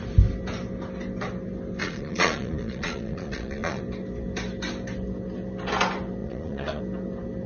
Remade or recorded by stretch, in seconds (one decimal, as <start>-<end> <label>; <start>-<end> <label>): 0.0-1.8 recorded; 1.8-3.8 remade; 3.8-6.2 recorded; 6.2-6.8 remade; 6.8-7.5 recorded